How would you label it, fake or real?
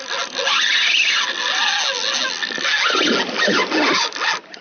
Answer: real